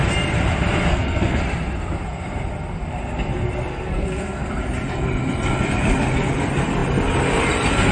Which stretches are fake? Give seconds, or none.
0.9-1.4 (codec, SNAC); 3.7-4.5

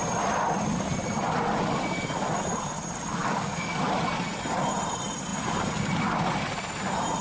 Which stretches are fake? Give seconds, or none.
3.2-3.8 (codec, DAC)

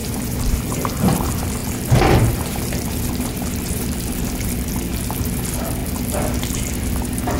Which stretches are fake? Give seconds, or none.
0.0-0.6 (vocoder, BigVGAN v2); 1.6-4.7

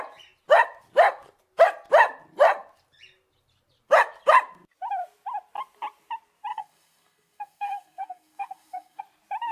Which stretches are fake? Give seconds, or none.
6.5-9.0 (codec, SNAC)

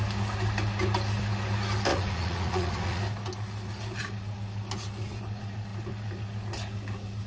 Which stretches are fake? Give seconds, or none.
1.9-3.0 (vocoder, Vocos)

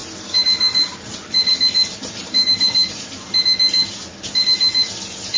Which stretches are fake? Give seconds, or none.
0.0-3.2 (vocoder, BigVGAN v2); 4.1-4.9

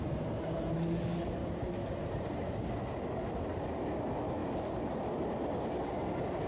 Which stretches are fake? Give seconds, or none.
1.4-2.4 (vocoder, BigVGAN v2); 4.4-5.4

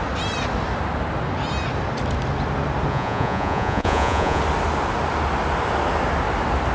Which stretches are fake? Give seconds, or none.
2.9-4.4 (vocoder, Vocos)